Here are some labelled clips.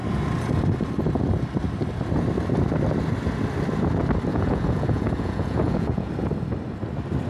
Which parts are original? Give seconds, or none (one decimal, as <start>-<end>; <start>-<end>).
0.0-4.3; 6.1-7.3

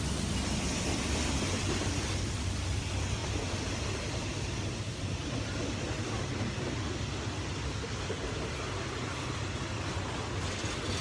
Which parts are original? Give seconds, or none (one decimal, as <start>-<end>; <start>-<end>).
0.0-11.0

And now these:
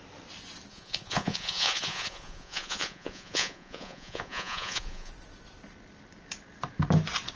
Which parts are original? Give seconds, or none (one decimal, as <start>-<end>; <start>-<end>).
0.0-0.7; 5.1-7.4